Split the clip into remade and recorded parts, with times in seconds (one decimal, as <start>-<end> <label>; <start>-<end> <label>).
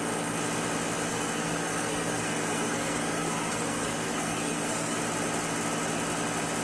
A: 0.0-1.1 recorded; 1.1-5.0 remade; 5.0-6.6 recorded